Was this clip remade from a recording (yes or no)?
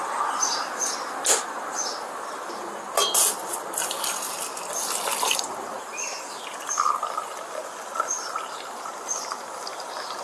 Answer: no